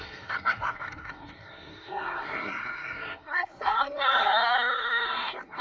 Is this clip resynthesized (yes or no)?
yes